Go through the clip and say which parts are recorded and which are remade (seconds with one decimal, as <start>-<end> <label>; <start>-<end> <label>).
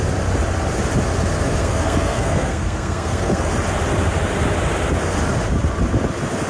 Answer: 0.0-1.6 recorded; 1.6-3.5 remade; 3.5-6.5 recorded